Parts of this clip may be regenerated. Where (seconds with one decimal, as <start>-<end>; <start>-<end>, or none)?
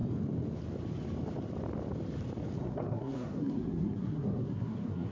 2.6-5.1